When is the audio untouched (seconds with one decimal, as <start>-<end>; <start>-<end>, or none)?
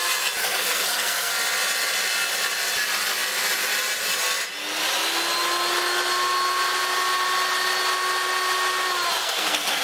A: 0.0-0.4; 1.3-9.2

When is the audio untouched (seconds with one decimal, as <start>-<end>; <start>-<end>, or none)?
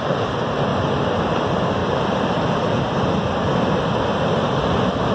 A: 0.0-5.1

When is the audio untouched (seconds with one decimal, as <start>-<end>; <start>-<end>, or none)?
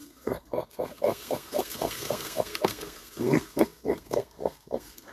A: none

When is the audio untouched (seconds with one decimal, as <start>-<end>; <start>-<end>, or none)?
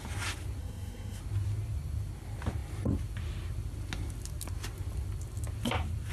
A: 0.0-0.6; 1.2-6.1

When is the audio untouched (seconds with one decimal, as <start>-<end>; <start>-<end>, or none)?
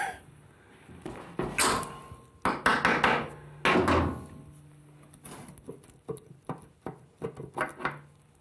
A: 0.0-8.4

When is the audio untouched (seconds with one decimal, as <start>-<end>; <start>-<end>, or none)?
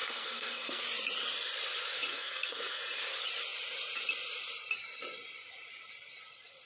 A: 0.8-2.1; 2.8-6.7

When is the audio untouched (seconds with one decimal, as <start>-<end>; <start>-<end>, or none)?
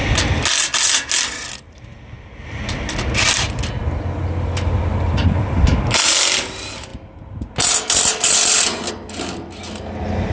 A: 0.0-10.3